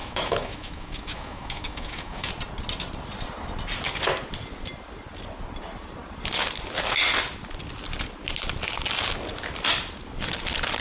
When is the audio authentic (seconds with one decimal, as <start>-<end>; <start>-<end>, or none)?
2.3-10.8